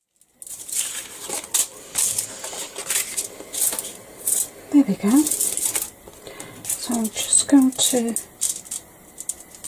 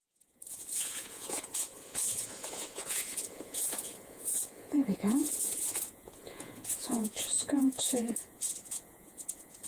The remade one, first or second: second